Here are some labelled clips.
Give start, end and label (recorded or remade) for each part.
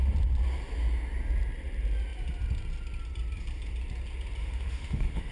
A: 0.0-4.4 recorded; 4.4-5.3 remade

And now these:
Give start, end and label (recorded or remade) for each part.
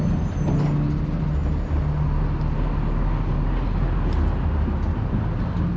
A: 0.0-5.8 recorded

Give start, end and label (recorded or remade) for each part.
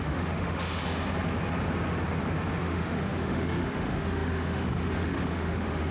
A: 0.0-0.8 remade; 0.8-2.6 recorded; 2.6-5.9 remade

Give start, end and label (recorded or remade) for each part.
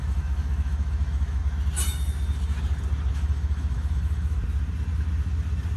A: 0.0-1.4 remade; 1.4-3.1 recorded; 3.1-4.4 remade; 4.4-5.8 recorded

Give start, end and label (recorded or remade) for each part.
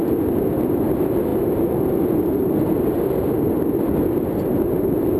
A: 0.0-5.2 recorded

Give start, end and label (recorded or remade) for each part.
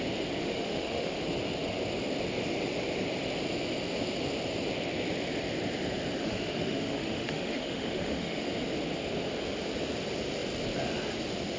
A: 0.0-0.4 recorded; 0.4-1.2 remade; 1.2-6.2 recorded; 6.2-8.5 remade; 8.5-11.6 recorded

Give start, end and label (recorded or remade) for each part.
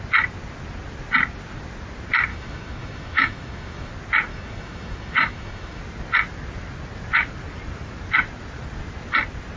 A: 0.0-2.3 recorded; 2.3-3.9 remade; 3.9-4.3 recorded; 4.3-5.8 remade; 5.8-9.6 recorded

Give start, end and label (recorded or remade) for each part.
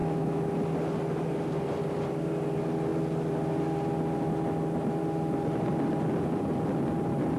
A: 0.0-0.5 remade; 0.5-7.4 recorded